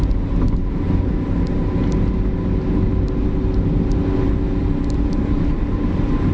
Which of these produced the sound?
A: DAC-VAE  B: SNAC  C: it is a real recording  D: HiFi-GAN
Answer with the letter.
C